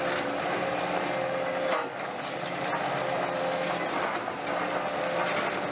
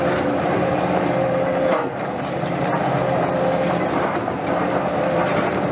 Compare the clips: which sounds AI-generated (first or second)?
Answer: second